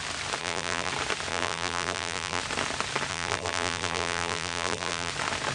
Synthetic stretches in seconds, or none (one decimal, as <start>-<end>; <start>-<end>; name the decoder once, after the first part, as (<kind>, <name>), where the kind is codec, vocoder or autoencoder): 0.4-0.9 (vocoder, BigVGAN v2); 1.3-2.4; 3.1-5.1

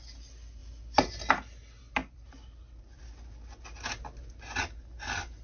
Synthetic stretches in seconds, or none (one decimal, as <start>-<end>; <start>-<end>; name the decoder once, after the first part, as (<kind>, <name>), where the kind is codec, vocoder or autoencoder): 2.0-3.0 (vocoder, BigVGAN v2)

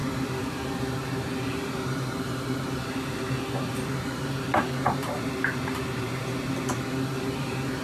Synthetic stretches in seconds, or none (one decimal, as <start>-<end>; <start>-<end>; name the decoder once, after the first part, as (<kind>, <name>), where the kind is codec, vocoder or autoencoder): 0.0-6.2 (vocoder, BigVGAN v2); 7.2-7.8

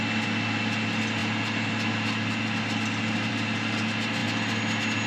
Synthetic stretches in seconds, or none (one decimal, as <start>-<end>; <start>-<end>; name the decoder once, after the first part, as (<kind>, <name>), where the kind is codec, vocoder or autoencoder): none

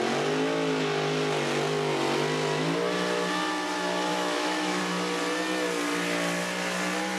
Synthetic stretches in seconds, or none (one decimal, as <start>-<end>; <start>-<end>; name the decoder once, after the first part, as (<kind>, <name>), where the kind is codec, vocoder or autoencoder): 4.1-4.8 (autoencoder, DAC-VAE)

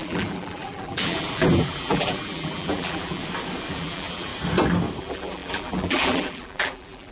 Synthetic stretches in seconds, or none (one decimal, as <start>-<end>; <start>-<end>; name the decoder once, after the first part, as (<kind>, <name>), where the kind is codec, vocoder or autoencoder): 0.0-3.2 (vocoder, BigVGAN v2); 3.7-4.3; 5.0-7.1